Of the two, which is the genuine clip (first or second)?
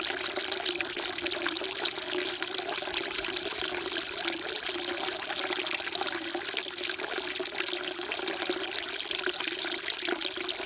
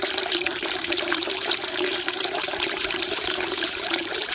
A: first